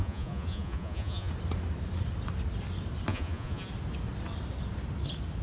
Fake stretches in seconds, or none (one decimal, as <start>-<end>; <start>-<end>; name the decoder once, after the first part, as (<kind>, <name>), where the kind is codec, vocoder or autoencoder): 0.0-1.3 (vocoder, Vocos); 3.1-3.7